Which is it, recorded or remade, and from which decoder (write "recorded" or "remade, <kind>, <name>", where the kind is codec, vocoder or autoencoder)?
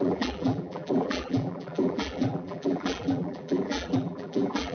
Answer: remade, vocoder, BigVGAN v2